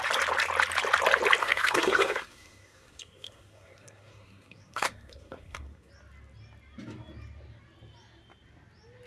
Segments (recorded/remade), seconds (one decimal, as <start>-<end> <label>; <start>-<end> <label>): 0.0-1.4 recorded; 1.4-5.9 remade; 5.9-9.1 recorded